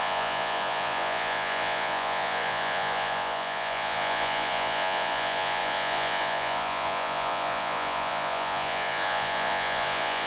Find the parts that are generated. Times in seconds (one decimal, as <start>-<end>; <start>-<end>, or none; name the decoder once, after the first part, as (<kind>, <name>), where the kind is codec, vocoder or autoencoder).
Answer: 0.0-10.3 (vocoder, Vocos)